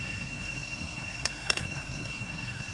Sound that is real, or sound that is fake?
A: fake